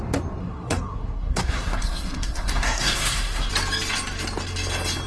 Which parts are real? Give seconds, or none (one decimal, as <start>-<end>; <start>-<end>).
0.0-0.4; 3.5-5.1